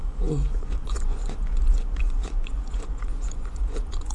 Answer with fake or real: fake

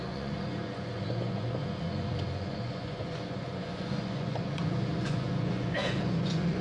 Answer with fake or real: fake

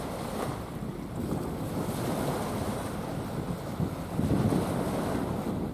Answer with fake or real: real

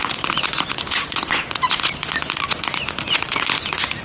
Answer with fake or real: fake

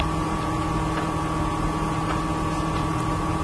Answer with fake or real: real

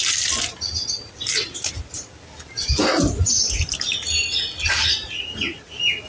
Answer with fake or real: real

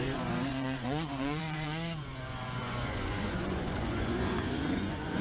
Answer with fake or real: fake